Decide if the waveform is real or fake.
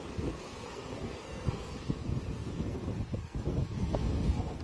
fake